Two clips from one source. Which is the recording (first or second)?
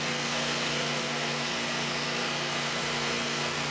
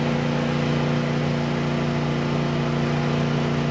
second